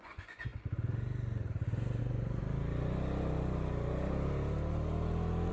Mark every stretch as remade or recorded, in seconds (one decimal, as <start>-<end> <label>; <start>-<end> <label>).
0.0-0.5 remade; 0.5-2.0 recorded; 2.0-2.4 remade; 2.4-5.5 recorded